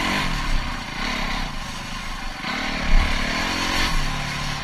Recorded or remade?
recorded